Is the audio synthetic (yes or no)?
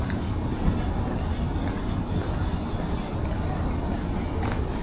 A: no